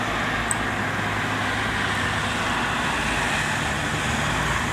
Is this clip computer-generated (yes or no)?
no